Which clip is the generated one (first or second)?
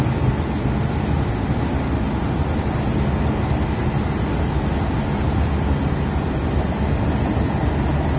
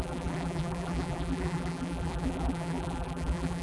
second